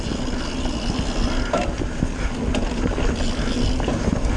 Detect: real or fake real